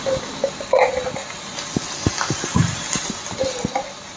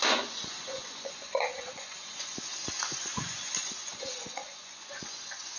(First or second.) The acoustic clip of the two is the first